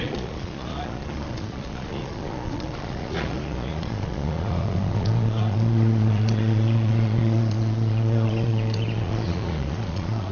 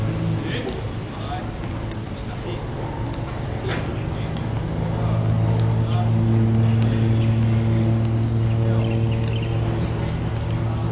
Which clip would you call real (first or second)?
second